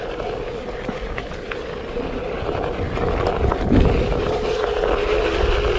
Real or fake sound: real